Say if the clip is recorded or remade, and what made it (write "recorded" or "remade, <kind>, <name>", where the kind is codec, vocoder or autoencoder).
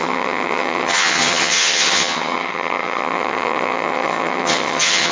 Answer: remade, vocoder, HiFi-GAN